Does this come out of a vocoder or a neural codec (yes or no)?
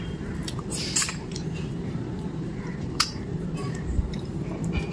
yes